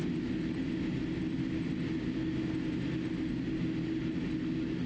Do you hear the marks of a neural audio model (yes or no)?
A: no